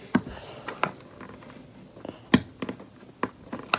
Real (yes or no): yes